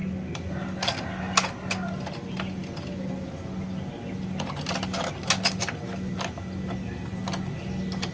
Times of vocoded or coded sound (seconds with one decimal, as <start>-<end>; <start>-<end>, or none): none